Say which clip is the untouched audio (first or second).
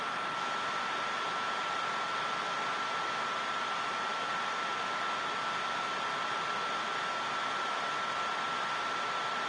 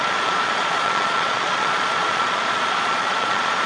first